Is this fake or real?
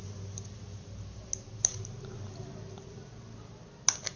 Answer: real